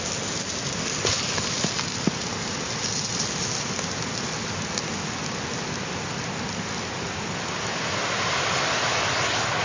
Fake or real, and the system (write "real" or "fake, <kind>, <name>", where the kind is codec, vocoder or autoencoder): real